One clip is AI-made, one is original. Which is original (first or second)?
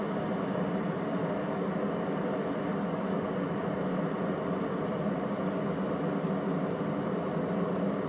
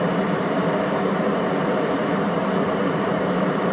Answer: first